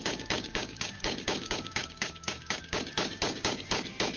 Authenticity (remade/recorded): remade